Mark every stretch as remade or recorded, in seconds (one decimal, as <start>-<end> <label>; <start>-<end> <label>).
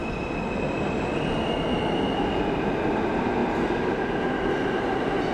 0.0-2.9 recorded; 2.9-3.4 remade; 3.4-4.5 recorded; 4.5-5.3 remade